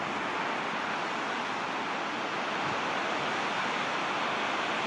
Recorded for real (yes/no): yes